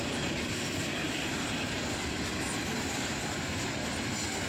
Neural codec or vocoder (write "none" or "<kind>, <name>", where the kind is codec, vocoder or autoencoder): none